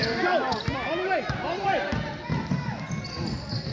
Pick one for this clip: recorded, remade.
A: recorded